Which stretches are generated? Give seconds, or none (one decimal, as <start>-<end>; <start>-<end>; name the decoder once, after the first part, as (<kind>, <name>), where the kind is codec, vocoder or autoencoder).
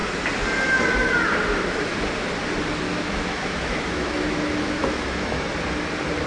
2.9-5.5 (autoencoder, DAC-VAE)